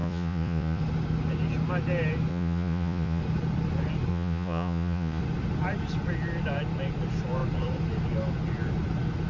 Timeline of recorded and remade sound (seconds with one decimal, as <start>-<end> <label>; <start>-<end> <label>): 0.0-0.8 remade; 0.8-2.3 recorded; 2.3-3.2 remade; 3.2-4.1 recorded; 4.1-5.2 remade; 5.2-9.3 recorded